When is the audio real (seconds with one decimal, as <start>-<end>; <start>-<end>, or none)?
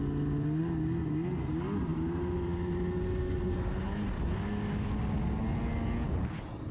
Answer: 0.0-6.7